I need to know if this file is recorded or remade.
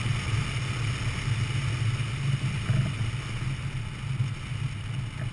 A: recorded